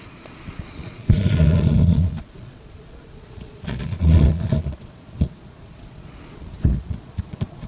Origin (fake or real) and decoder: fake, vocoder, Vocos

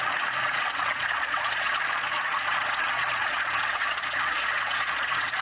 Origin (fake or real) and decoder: fake, vocoder, Vocos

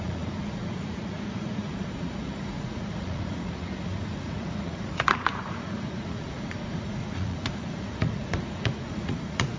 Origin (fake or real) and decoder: fake, vocoder, Vocos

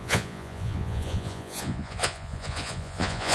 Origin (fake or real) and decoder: fake, vocoder, Vocos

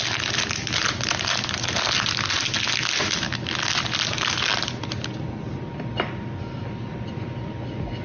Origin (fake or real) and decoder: real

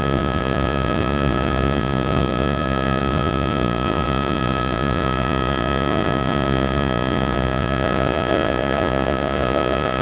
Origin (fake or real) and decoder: fake, vocoder, Vocos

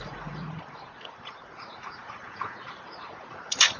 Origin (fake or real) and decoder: fake, vocoder, Vocos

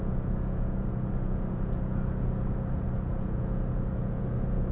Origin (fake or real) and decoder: fake, vocoder, Vocos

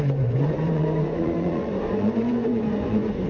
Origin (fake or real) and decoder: fake, vocoder, Vocos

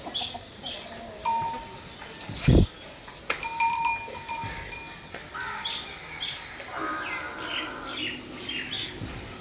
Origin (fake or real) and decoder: real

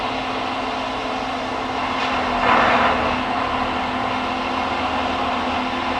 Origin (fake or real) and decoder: real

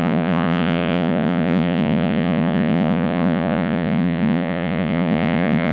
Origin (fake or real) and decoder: fake, vocoder, Vocos